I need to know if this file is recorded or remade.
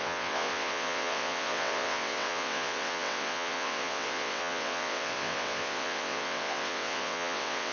remade